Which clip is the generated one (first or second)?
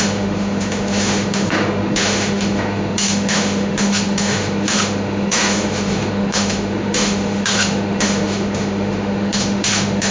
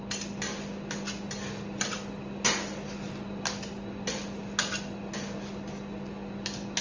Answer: first